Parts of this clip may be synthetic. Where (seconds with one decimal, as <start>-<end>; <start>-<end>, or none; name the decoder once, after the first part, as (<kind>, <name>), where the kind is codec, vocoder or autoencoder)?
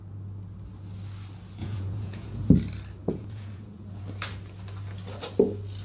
1.6-2.5 (vocoder, Vocos); 3.0-4.0